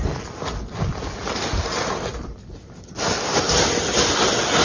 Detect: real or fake real